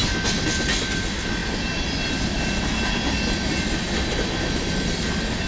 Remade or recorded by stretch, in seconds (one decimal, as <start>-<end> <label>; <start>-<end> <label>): 0.0-5.5 recorded

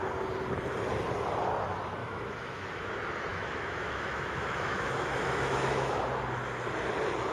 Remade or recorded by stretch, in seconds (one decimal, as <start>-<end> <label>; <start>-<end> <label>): 0.0-2.0 recorded; 2.0-2.9 remade; 2.9-3.3 recorded; 3.3-5.9 remade; 5.9-7.3 recorded

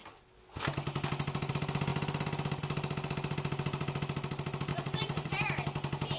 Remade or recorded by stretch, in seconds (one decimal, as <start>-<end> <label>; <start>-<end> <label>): 0.0-4.7 recorded; 4.7-5.3 remade; 5.3-6.2 recorded

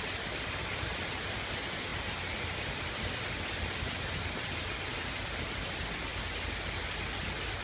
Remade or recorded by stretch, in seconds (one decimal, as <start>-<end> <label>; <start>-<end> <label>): 0.0-7.6 recorded